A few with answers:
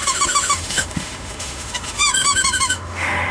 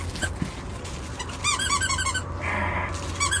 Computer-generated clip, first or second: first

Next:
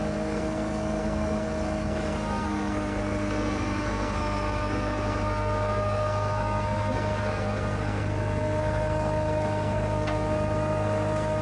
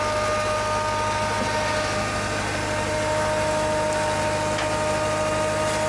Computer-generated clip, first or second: first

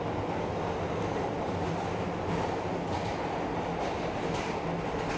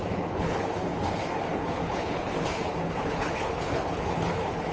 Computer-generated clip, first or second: second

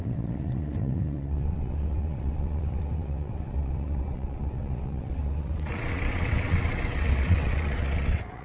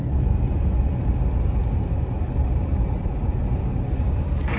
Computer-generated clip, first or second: first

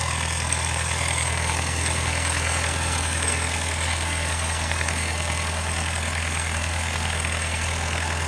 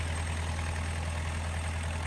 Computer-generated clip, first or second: first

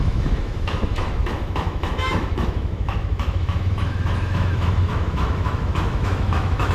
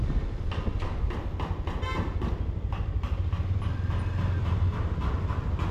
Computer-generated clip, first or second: first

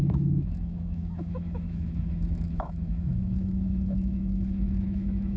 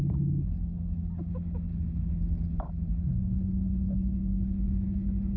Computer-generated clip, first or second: first